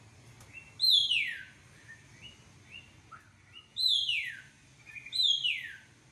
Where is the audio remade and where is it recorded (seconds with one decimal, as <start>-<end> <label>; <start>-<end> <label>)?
0.0-3.7 recorded; 3.7-4.3 remade; 4.3-6.1 recorded